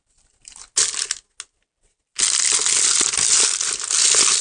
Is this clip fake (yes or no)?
no